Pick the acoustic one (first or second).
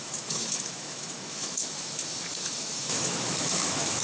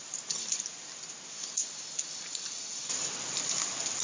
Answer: second